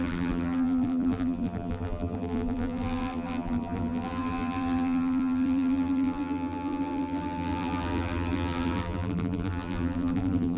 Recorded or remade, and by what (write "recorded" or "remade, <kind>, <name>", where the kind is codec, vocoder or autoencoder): remade, vocoder, BigVGAN v2